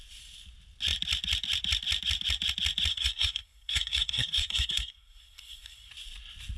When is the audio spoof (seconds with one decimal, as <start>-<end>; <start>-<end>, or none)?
2.9-5.9